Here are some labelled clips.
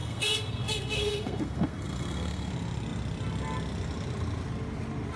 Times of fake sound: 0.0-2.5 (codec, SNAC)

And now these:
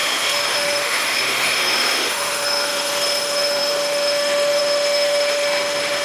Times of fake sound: 0.0-6.0 (autoencoder, DAC-VAE)

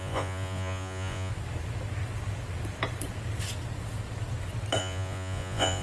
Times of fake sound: 0.0-1.3 (vocoder, Vocos); 4.8-5.8

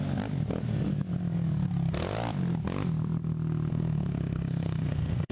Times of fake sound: 3.7-5.3 (codec, SNAC)

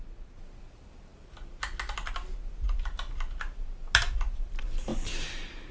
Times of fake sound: none

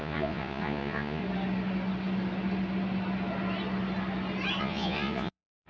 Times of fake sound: 0.0-1.2 (vocoder, Vocos); 4.6-5.7